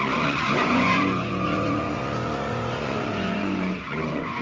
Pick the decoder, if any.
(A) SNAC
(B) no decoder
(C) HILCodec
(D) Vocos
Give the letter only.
D